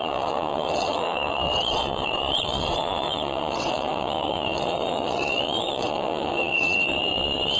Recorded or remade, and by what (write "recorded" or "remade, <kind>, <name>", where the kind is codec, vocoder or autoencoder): remade, vocoder, WaveNeXt